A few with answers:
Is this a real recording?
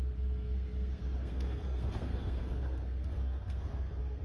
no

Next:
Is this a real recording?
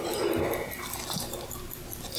yes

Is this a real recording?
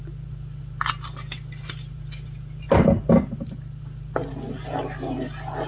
yes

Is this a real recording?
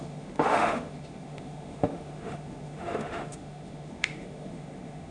no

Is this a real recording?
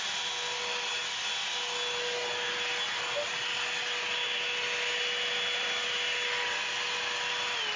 yes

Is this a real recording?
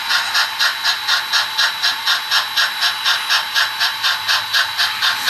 yes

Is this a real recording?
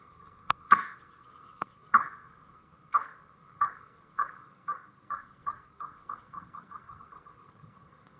no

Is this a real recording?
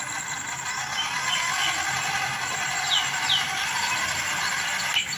yes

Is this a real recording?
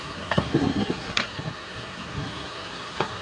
no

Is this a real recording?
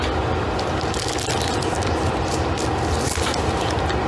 yes